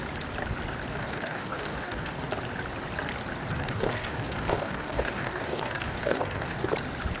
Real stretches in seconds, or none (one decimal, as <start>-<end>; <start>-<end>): 0.0-0.9; 2.1-3.5; 6.7-7.2